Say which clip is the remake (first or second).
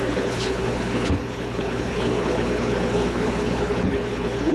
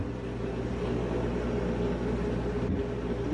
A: first